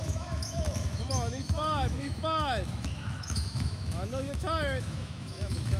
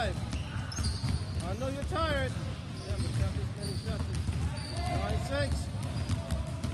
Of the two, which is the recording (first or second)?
second